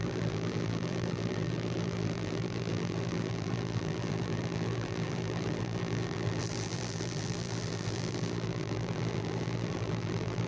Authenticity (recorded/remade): remade